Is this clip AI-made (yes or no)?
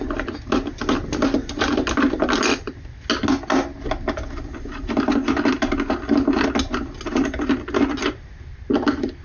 no